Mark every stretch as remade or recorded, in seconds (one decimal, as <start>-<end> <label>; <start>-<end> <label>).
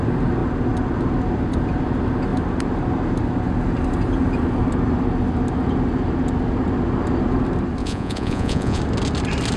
0.0-7.8 recorded; 7.8-8.8 remade; 8.8-9.6 recorded